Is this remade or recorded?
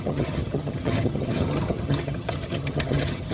remade